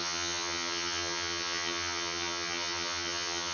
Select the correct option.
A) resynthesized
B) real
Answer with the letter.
A